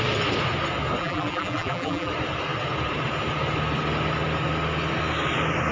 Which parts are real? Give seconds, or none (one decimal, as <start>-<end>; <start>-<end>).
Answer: 0.0-1.0; 2.1-5.7